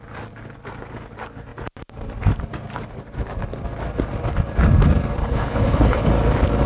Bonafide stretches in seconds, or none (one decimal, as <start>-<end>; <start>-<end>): 0.0-5.2; 6.1-6.7